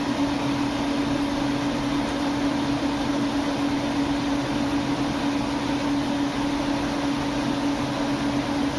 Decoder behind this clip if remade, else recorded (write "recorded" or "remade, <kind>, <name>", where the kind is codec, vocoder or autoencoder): recorded